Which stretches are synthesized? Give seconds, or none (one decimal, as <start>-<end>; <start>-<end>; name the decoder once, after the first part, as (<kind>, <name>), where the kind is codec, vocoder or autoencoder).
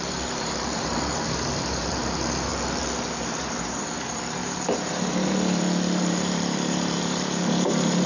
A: 0.0-2.5 (vocoder, BigVGAN v2); 3.6-8.1